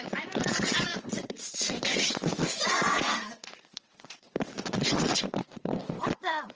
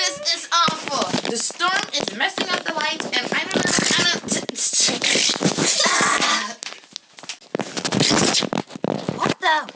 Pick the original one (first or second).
second